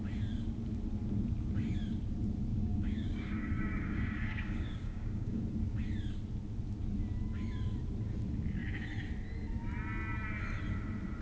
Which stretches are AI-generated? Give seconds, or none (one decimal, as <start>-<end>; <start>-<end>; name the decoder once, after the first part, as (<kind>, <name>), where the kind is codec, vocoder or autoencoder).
2.5-5.4 (codec, DAC)